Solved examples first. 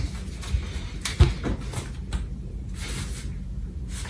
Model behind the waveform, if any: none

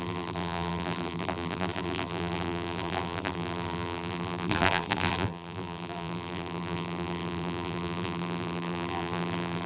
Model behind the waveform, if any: vocoder, BigVGAN v2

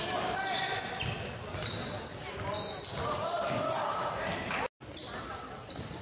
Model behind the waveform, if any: none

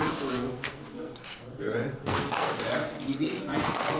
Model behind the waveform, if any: codec, SNAC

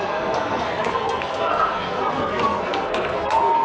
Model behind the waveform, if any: codec, SNAC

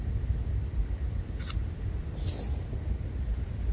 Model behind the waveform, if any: none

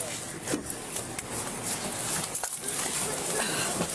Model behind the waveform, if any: none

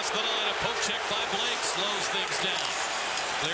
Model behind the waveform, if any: none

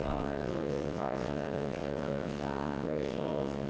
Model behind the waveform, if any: vocoder, WaveNeXt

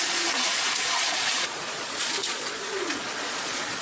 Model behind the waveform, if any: vocoder, Vocos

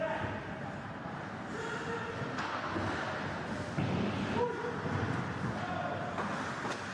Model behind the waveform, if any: none